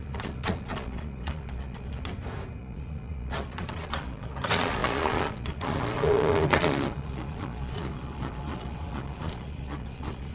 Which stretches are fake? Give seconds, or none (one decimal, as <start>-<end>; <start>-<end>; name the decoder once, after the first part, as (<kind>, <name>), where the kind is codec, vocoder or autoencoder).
0.0-2.1 (vocoder, Vocos); 2.6-10.3